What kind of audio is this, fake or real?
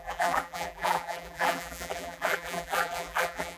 fake